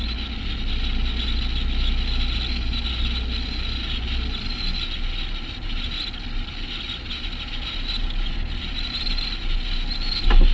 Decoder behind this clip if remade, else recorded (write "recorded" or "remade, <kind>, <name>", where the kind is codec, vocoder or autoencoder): recorded